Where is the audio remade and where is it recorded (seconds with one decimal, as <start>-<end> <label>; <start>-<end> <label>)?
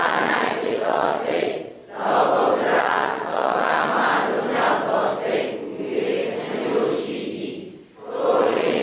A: 0.0-1.8 remade; 1.8-2.8 recorded; 2.8-3.9 remade; 3.9-8.4 recorded; 8.4-8.8 remade